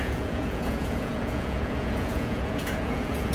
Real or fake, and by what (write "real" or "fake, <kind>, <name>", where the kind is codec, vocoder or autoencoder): fake, vocoder, Vocos